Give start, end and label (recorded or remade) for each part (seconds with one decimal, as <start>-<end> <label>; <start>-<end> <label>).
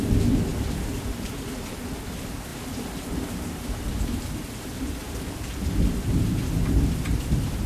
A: 0.0-0.5 remade; 0.5-1.2 recorded; 1.2-2.5 remade; 2.5-4.0 recorded; 4.0-5.0 remade; 5.0-7.0 recorded; 7.0-7.7 remade